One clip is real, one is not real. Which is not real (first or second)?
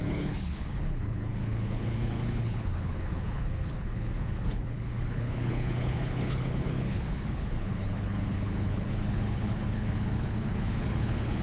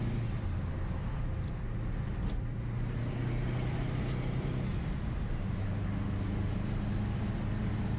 first